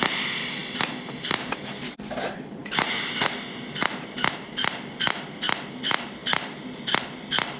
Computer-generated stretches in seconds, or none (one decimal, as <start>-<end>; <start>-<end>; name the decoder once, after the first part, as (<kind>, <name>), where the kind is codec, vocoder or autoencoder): 0.0-0.6 (vocoder, BigVGAN v2); 1.7-2.6; 4.4-7.6